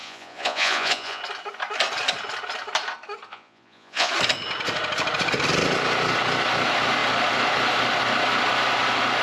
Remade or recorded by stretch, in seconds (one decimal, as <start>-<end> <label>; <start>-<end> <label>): 0.0-1.2 remade; 1.2-3.3 recorded; 3.3-4.1 remade; 4.1-9.2 recorded